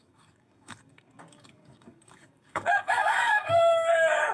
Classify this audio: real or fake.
fake